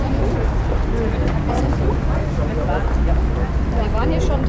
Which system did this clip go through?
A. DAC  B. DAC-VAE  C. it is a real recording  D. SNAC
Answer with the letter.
C